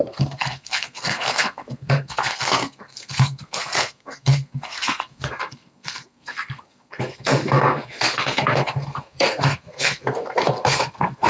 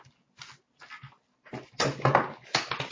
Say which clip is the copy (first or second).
first